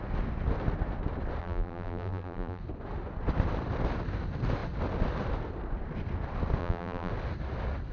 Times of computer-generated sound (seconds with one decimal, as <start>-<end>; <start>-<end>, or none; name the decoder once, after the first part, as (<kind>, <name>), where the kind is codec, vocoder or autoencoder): 1.4-2.6 (vocoder, BigVGAN v2); 6.6-7.1